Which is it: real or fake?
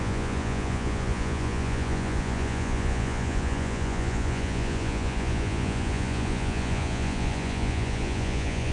fake